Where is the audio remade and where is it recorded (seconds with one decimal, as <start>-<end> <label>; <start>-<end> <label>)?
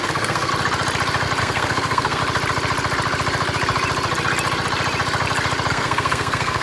0.0-0.5 remade; 0.5-1.4 recorded; 1.4-2.2 remade; 2.2-5.7 recorded; 5.7-6.6 remade